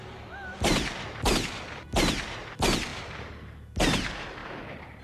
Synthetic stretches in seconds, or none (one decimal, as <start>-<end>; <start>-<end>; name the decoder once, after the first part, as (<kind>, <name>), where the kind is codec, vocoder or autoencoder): none